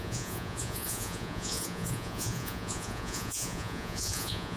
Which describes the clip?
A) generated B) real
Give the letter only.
A